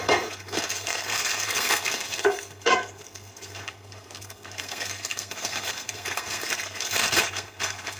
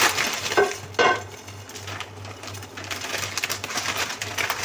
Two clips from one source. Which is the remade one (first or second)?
first